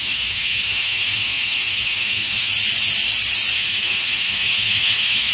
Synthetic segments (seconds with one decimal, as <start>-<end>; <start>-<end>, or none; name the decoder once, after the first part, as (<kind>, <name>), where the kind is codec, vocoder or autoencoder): 0.0-2.5 (autoencoder, DAC-VAE); 3.5-5.3